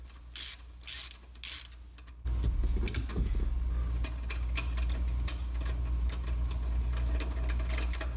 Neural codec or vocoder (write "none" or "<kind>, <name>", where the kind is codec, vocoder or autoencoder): none